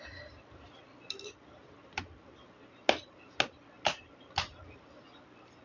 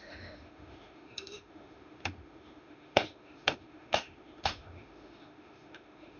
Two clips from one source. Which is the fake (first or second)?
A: second